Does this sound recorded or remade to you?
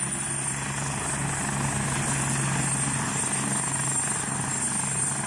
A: recorded